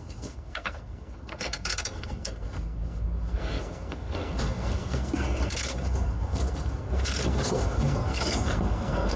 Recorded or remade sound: remade